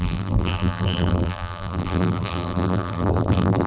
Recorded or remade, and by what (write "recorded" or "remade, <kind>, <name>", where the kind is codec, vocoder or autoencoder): remade, vocoder, BigVGAN v2